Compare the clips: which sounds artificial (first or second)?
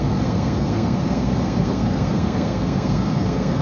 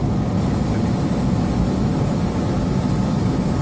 first